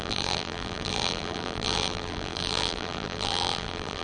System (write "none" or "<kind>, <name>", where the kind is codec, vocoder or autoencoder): vocoder, BigVGAN v2